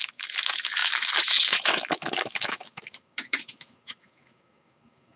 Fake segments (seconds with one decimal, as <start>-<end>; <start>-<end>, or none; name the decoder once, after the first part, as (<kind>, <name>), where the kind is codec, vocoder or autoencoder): 0.0-5.2 (autoencoder, DAC-VAE)